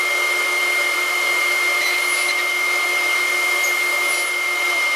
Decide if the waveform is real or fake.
real